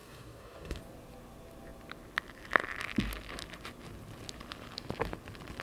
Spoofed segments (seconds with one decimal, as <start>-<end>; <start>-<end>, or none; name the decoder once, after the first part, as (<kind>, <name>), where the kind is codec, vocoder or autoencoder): 0.0-0.8 (codec, DAC)

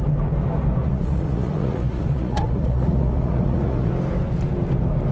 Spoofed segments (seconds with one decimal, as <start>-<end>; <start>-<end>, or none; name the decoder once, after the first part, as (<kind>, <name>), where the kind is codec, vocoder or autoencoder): 0.8-3.9 (vocoder, Vocos)

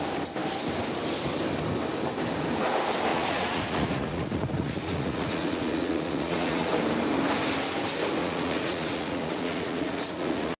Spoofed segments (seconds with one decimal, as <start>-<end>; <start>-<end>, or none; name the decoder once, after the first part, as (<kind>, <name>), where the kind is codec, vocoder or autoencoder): 3.1-6.7 (vocoder, Vocos); 8.2-10.6

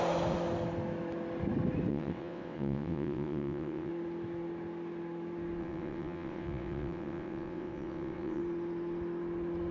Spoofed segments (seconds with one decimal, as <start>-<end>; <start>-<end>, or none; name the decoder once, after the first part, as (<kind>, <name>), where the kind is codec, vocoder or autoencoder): 1.9-3.9 (vocoder, WaveNeXt); 5.6-8.4

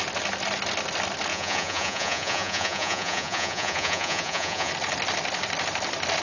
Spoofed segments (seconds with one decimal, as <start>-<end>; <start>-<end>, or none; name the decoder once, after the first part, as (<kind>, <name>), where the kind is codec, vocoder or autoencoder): 1.3-4.7 (vocoder, Vocos)